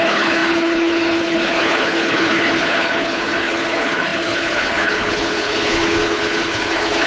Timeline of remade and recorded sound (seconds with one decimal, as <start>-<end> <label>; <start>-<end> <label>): 0.0-7.1 remade